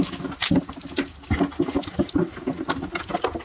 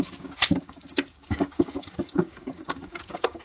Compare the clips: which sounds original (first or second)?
first